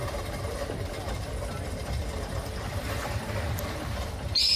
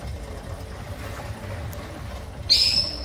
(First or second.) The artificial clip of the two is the first